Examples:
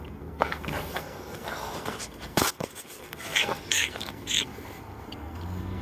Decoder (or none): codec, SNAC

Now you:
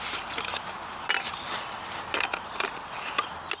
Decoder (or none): none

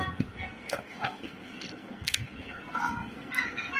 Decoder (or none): codec, SNAC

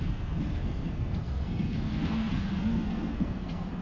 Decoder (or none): codec, SNAC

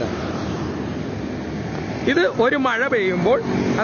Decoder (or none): none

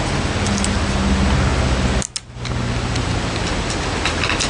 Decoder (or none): none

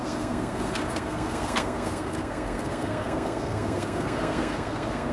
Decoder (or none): codec, SNAC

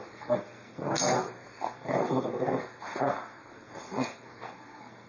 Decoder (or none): codec, SNAC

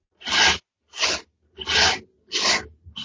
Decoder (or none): none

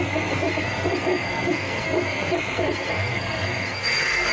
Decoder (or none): codec, SNAC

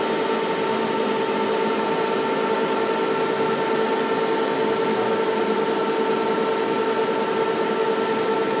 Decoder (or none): none